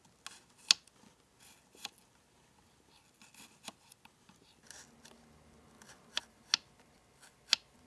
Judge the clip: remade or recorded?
recorded